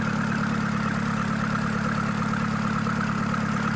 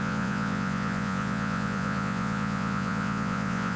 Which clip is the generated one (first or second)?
second